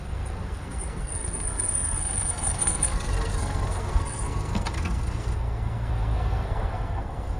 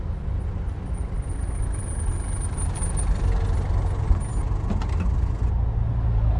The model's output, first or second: first